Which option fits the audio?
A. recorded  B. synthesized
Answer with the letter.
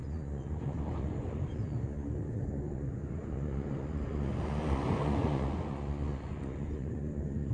B